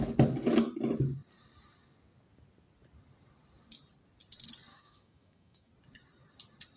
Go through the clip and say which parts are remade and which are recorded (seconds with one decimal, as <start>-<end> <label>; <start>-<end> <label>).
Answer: 0.0-4.7 recorded; 4.7-5.7 remade; 5.7-6.8 recorded